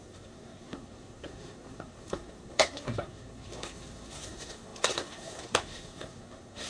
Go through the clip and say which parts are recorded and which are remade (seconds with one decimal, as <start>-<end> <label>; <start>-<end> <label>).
0.0-6.7 remade